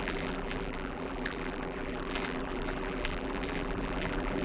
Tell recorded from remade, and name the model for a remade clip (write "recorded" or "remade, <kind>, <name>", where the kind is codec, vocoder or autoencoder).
remade, vocoder, BigVGAN v2